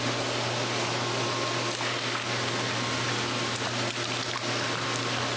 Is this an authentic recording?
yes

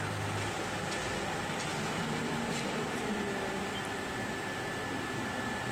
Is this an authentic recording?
yes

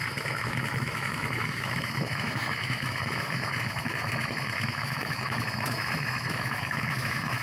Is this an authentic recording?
no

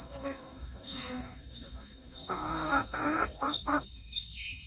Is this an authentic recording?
no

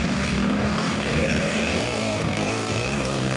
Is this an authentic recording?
no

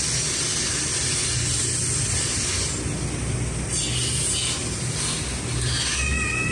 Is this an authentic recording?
yes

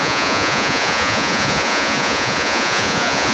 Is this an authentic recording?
no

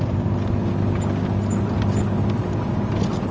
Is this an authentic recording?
yes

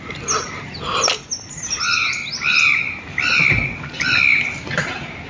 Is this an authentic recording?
yes